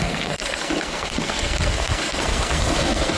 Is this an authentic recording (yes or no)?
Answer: no